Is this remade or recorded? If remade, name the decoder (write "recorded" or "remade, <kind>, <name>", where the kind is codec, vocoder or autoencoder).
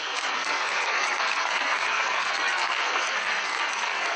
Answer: remade, codec, SNAC